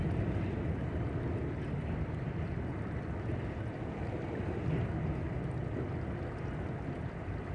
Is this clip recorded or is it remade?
recorded